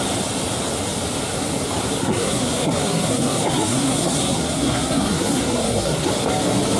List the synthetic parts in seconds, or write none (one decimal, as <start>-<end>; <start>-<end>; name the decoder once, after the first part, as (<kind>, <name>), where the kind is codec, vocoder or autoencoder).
2.0-6.1 (codec, SNAC)